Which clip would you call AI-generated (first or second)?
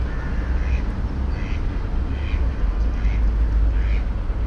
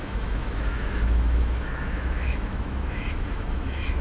second